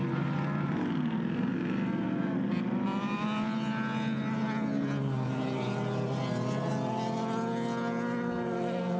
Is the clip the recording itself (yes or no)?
yes